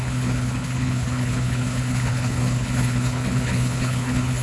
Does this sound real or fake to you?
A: fake